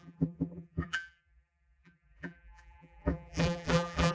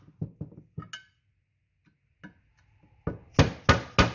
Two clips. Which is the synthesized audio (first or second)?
first